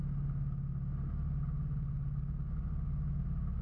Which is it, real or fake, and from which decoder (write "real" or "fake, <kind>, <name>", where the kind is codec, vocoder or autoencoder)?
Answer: real